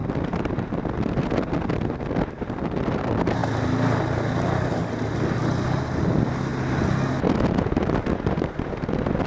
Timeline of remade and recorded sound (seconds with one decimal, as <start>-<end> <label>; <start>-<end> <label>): 0.0-9.3 recorded